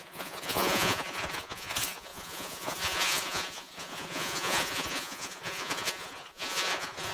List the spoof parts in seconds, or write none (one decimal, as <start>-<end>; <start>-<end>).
0.0-7.1